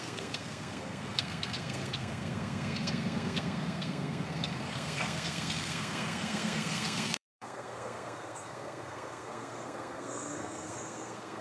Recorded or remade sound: remade